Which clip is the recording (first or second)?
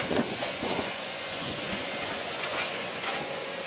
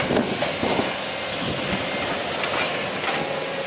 second